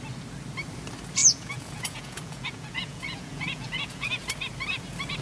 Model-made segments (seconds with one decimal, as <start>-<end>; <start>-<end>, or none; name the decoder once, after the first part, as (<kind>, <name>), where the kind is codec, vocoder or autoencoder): 1.2-4.1 (vocoder, Vocos)